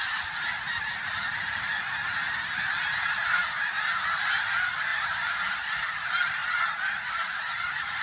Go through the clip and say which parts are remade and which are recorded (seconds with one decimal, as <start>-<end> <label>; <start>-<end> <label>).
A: 0.0-1.7 remade; 1.7-2.8 recorded; 2.8-3.4 remade; 3.4-4.3 recorded; 4.3-6.4 remade; 6.4-7.1 recorded; 7.1-8.0 remade